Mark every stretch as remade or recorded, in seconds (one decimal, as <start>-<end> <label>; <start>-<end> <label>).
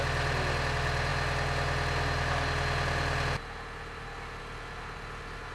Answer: 0.0-5.5 recorded